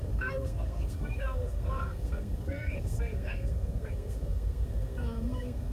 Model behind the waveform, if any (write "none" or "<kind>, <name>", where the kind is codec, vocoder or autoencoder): codec, SNAC